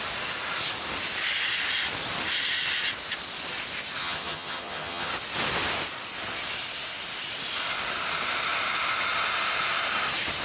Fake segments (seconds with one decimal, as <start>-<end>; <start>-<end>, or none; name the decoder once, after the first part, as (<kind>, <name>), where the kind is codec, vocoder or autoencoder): 4.0-5.1 (vocoder, HiFi-GAN)